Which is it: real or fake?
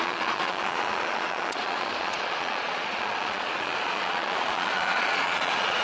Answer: fake